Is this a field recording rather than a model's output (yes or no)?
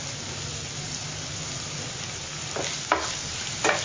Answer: yes